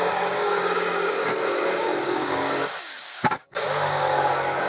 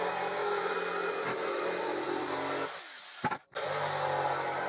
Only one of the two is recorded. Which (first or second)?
second